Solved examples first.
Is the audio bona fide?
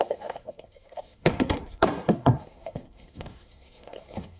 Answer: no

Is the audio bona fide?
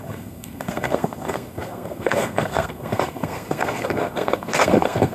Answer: no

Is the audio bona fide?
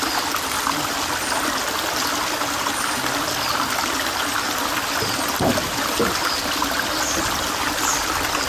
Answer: yes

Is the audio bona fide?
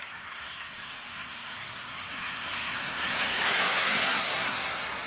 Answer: no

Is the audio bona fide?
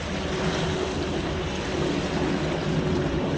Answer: yes